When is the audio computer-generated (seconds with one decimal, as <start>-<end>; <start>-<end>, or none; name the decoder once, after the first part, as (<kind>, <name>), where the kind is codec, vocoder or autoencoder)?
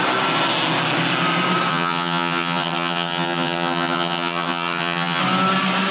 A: 1.7-5.2 (vocoder, HiFi-GAN)